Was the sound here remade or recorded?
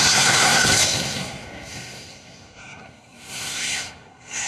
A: remade